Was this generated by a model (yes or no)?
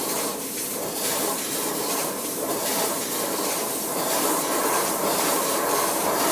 yes